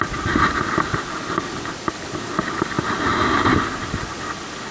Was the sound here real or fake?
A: real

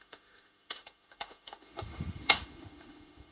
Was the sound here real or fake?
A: fake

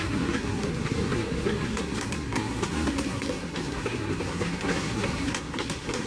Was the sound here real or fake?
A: fake